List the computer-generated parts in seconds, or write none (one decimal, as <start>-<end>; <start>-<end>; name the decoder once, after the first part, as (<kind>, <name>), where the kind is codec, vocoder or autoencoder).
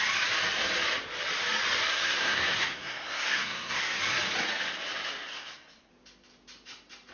1.9-4.0 (codec, SNAC); 5.3-5.9